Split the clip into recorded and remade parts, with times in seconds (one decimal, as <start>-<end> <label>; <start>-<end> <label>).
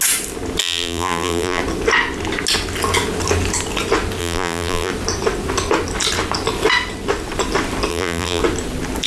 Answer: 0.0-0.6 recorded; 0.6-1.6 remade; 1.6-4.2 recorded; 4.2-4.9 remade; 4.9-7.9 recorded; 7.9-8.4 remade; 8.4-9.1 recorded